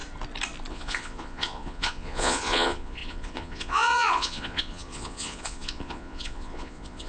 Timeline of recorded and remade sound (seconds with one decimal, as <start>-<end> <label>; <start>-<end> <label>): 0.0-0.7 recorded; 0.7-7.1 remade